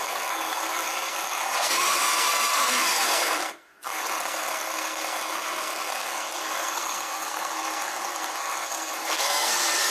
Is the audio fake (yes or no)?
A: yes